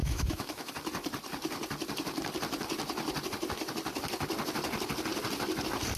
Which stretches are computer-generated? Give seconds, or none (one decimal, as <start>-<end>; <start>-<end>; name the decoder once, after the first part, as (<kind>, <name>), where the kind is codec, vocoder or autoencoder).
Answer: 0.0-0.7 (autoencoder, DAC-VAE)